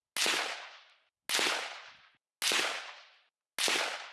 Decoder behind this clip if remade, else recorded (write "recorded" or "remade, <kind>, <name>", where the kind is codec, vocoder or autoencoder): recorded